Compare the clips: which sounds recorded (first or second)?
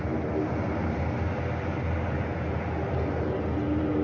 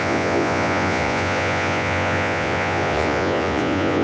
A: first